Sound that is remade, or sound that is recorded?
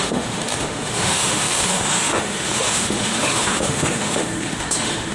remade